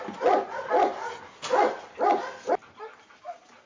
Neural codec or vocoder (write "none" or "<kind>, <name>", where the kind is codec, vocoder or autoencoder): none